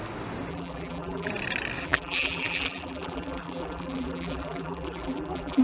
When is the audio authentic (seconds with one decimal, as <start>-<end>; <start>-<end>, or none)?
0.0-0.5; 1.3-1.8

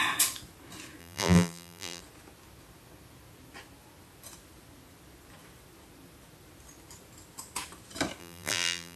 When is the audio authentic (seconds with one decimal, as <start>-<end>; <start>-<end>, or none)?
0.0-1.0; 2.0-8.2

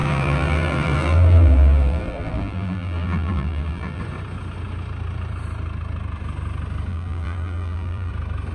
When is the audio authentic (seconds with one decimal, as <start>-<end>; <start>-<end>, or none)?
4.0-6.9; 8.1-8.5

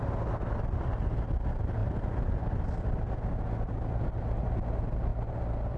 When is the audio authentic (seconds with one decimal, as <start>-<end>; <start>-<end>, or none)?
0.0-1.8; 3.0-5.1

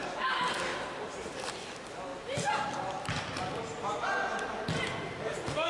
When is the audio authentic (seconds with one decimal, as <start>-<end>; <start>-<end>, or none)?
0.0-0.7; 1.3-5.7

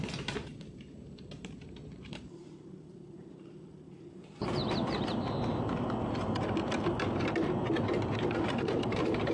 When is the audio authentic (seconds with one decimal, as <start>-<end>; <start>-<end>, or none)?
4.6-8.5

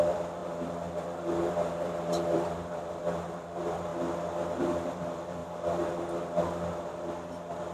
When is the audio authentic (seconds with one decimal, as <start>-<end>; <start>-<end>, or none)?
3.9-4.6; 5.4-6.8

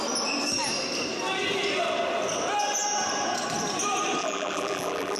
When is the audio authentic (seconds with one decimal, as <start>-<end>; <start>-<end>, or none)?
0.0-4.2